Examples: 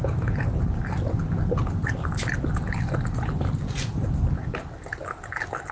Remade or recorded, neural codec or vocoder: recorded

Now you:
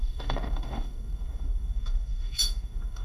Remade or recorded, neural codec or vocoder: remade, codec, DAC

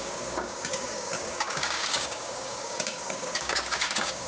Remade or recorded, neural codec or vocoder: remade, codec, DAC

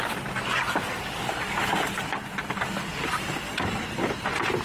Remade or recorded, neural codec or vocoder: recorded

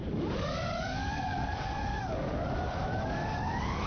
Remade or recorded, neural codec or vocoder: remade, codec, DAC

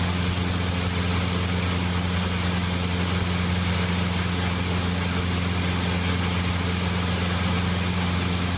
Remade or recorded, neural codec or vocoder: recorded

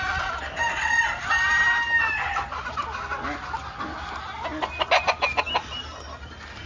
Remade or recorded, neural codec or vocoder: recorded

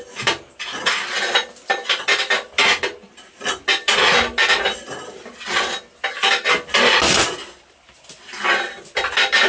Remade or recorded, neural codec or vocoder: recorded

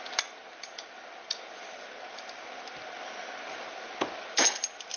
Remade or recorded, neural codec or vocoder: recorded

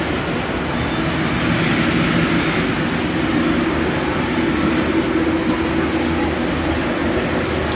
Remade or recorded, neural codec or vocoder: recorded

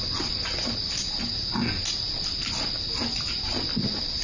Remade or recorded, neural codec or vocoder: recorded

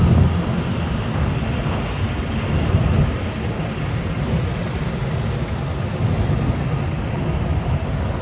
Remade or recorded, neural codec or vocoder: recorded